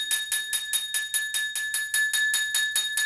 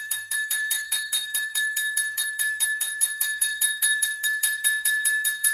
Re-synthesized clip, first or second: second